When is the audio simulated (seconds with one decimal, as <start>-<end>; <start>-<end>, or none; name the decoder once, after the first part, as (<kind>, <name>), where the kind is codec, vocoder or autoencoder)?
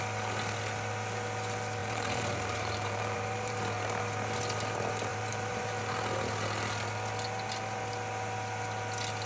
1.8-3.6 (vocoder, BigVGAN v2); 5.1-5.9